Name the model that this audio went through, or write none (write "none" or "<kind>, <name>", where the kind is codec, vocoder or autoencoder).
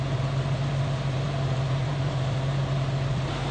vocoder, BigVGAN v2